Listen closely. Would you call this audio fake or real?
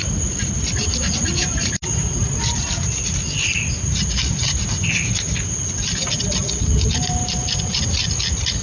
real